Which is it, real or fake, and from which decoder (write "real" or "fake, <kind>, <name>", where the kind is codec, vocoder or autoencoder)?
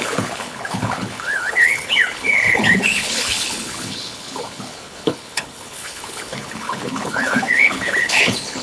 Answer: fake, codec, HILCodec